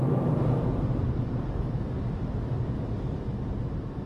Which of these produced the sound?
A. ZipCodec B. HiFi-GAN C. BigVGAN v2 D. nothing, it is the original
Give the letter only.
D